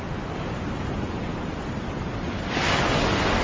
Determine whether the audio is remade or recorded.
recorded